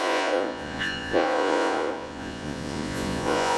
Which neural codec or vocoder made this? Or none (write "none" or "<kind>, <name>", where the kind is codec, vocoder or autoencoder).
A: vocoder, Vocos